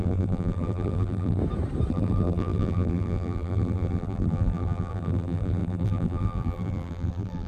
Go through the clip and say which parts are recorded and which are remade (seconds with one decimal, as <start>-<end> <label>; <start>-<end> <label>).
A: 0.0-1.4 remade; 1.4-1.9 recorded; 1.9-7.5 remade